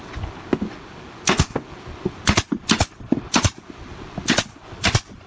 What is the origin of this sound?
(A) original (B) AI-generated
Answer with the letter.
A